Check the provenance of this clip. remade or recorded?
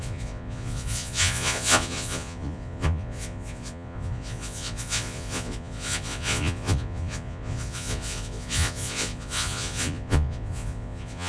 remade